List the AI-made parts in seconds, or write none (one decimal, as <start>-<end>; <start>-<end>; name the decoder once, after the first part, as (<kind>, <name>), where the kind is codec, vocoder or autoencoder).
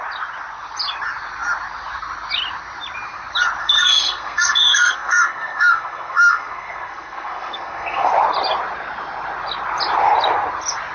3.6-8.1 (codec, SNAC)